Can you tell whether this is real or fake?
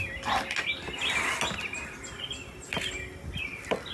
real